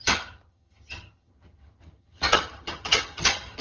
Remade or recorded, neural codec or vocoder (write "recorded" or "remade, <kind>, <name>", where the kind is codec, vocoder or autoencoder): remade, vocoder, HiFi-GAN